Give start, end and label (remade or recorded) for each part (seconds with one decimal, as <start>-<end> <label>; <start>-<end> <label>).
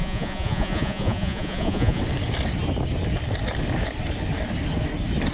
0.0-2.0 remade; 2.0-5.3 recorded